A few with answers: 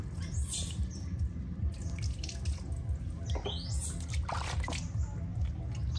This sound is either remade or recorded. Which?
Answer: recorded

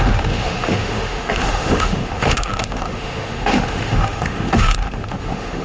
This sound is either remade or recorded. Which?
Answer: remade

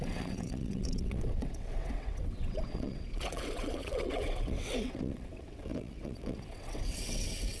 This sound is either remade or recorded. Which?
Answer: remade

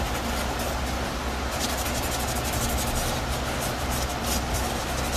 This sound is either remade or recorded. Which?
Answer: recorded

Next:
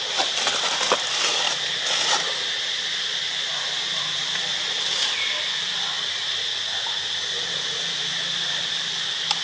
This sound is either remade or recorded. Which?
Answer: recorded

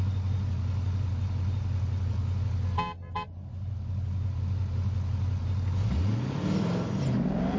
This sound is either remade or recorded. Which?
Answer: recorded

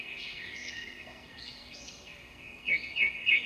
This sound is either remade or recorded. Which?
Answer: remade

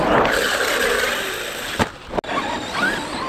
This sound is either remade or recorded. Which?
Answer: recorded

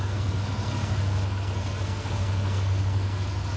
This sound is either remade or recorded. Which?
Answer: remade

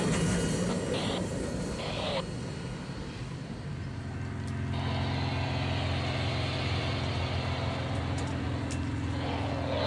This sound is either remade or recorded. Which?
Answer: recorded